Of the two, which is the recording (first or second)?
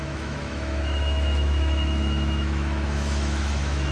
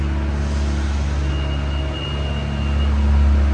second